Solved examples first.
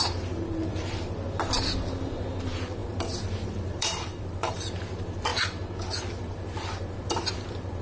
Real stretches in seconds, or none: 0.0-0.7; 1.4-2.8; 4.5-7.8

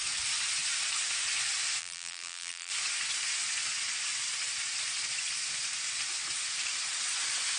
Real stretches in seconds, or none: 0.0-1.8; 2.7-7.6

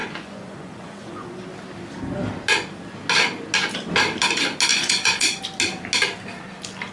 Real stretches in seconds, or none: 1.4-4.7; 5.4-6.9

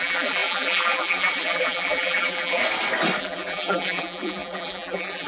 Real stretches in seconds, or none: 2.6-3.2